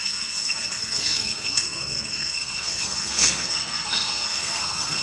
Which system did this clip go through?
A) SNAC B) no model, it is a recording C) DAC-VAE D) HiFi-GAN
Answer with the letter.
A